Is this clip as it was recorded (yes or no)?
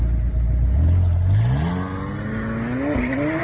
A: yes